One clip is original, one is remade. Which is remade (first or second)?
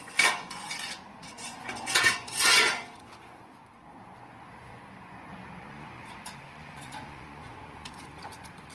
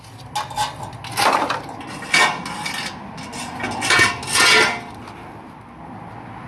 first